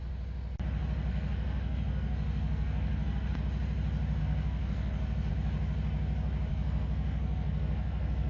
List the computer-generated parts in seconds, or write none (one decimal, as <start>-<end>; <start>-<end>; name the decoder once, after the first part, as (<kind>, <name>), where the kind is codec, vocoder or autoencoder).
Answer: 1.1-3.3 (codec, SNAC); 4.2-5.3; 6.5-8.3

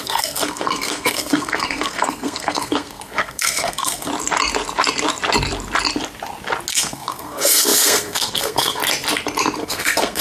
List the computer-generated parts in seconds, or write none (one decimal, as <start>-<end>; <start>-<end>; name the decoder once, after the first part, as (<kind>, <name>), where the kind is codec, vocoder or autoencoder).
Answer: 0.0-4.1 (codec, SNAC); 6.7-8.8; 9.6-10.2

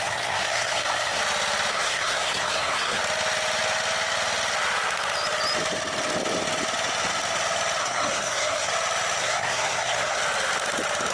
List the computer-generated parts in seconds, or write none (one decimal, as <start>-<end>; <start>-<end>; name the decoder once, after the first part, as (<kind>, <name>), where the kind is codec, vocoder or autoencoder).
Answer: 0.0-1.2 (codec, SNAC); 1.7-3.0; 7.8-8.7; 9.2-10.2

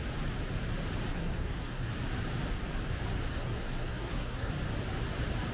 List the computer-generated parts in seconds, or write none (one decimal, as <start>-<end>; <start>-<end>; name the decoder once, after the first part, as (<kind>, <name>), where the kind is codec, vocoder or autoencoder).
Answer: 1.1-1.9 (codec, SNAC); 3.3-4.5